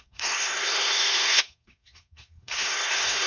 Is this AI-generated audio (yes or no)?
yes